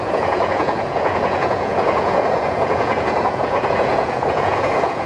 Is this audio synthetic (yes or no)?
yes